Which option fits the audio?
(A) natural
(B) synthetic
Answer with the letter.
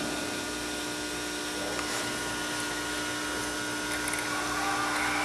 A